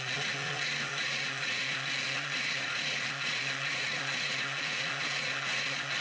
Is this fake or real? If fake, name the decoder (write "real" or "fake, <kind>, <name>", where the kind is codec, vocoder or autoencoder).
fake, vocoder, Vocos